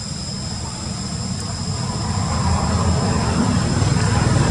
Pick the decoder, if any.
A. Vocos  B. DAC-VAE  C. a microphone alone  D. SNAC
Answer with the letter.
C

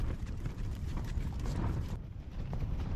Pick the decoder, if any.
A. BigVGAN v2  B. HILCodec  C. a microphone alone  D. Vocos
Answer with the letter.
A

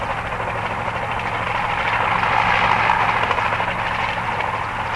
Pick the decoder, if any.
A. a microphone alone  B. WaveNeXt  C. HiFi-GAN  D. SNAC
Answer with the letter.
A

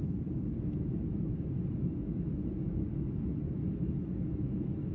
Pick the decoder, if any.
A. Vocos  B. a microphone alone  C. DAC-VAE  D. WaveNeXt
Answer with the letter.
C